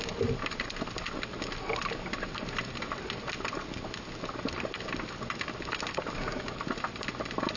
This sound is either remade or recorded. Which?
recorded